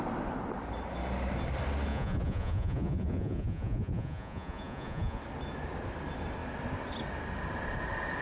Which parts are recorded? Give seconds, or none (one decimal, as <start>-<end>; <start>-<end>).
0.0-1.9; 5.2-8.2